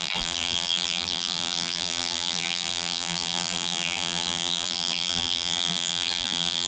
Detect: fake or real fake